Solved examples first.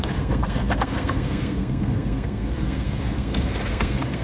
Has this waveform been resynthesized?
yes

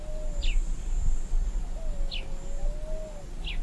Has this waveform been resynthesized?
no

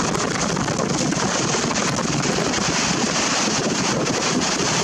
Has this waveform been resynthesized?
no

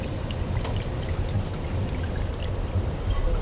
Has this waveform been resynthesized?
no